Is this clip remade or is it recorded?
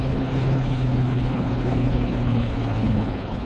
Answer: remade